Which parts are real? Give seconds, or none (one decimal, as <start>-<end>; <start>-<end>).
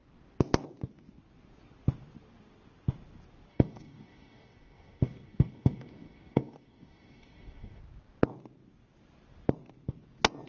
0.0-3.5; 7.8-10.5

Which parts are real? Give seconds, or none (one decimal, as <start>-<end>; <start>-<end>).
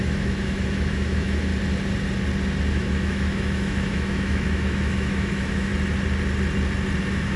1.5-2.7; 5.7-7.0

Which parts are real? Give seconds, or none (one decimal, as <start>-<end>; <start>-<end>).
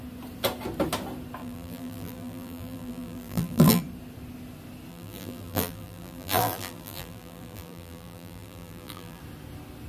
0.0-1.4; 3.8-4.9; 9.2-9.9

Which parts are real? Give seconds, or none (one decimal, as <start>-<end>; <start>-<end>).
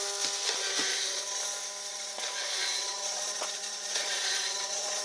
0.0-0.9; 1.4-1.9